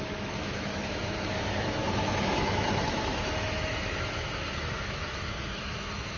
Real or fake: fake